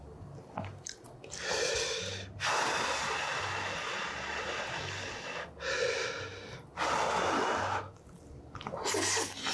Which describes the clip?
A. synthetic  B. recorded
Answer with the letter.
B